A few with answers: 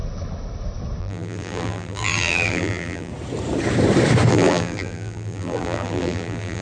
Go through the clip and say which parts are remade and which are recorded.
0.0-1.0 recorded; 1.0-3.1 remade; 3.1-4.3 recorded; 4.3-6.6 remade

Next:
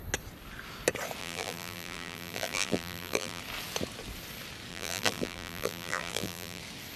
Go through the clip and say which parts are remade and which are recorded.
0.0-1.2 recorded; 1.2-3.4 remade; 3.4-4.7 recorded; 4.7-6.6 remade; 6.6-7.0 recorded